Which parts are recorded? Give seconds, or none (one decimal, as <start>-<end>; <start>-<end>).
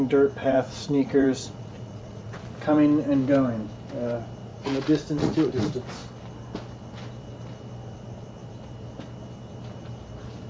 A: 0.0-0.4; 2.4-4.5; 5.5-10.5